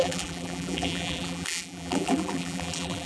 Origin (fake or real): fake